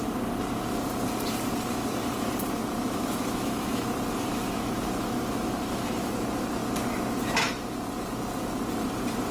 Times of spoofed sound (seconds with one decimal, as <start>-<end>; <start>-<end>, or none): 2.8-3.9; 4.3-6.1